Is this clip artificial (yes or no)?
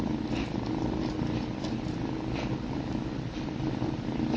no